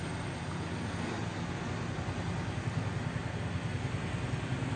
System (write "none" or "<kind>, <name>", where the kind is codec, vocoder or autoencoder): none